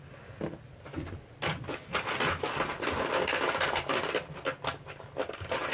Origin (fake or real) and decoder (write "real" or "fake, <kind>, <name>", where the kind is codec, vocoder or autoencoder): real